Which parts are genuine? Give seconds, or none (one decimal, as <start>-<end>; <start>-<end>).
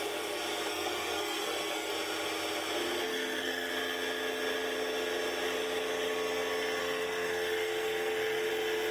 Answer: 0.0-0.7; 1.9-3.1; 3.7-6.8; 8.5-8.9